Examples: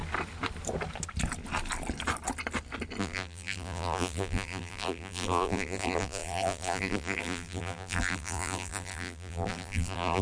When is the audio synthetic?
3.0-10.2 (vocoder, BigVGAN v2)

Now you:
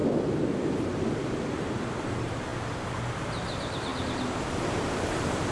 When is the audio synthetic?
0.0-2.5 (vocoder, BigVGAN v2); 3.1-3.9; 4.7-5.5

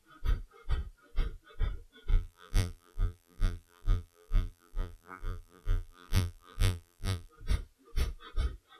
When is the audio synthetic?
2.1-7.3 (vocoder, BigVGAN v2)

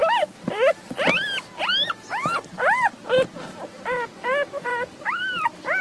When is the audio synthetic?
none